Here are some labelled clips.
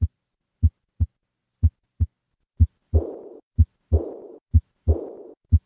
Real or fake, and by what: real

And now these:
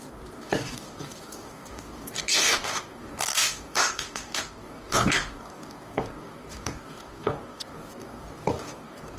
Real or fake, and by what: fake, codec, DAC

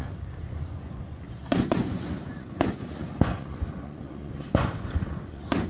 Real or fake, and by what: fake, vocoder, Vocos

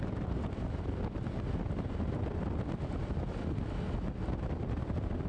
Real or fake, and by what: real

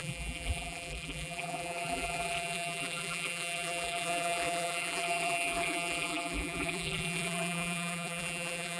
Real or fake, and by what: fake, vocoder, BigVGAN v2